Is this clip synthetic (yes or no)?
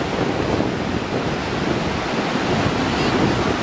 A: no